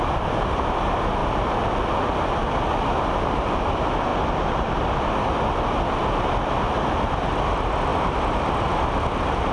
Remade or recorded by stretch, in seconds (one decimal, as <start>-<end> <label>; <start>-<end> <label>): 0.0-9.5 recorded